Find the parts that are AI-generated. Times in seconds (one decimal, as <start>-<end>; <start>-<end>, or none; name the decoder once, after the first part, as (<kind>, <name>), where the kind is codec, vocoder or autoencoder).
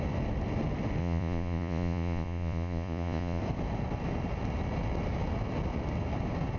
1.0-3.4 (vocoder, Vocos)